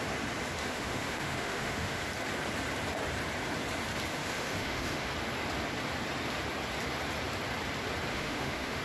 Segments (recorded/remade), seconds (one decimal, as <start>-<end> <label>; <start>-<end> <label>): 0.0-0.6 recorded; 0.6-2.0 remade; 2.0-4.1 recorded; 4.1-5.1 remade; 5.1-8.1 recorded; 8.1-8.8 remade